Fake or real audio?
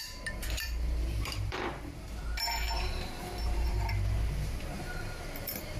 fake